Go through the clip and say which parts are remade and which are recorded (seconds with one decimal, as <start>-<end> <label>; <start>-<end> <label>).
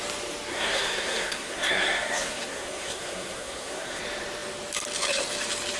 0.0-0.5 recorded; 0.5-4.0 remade; 4.0-5.8 recorded